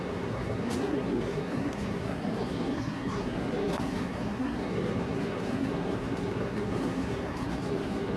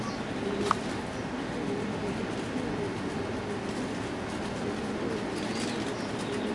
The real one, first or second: second